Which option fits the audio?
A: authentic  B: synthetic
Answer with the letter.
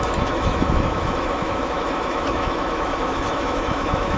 B